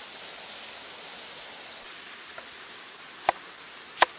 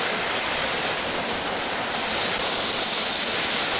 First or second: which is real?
first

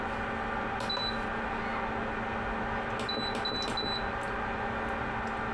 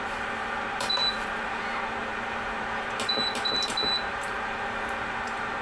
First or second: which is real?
first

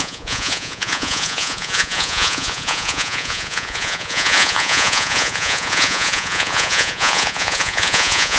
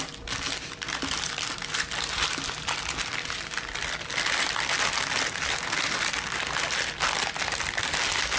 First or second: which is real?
second